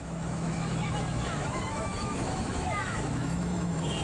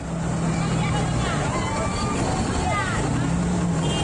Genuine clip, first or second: second